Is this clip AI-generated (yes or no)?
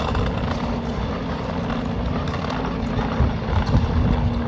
no